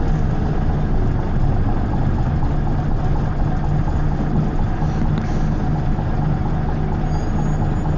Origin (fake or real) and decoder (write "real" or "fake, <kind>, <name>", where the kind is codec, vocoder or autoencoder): real